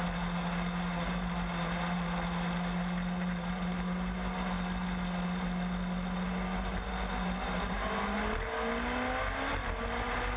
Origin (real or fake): real